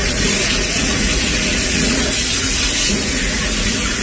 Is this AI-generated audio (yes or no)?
yes